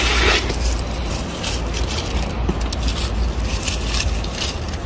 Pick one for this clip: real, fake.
real